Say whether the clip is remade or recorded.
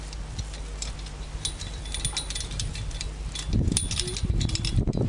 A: recorded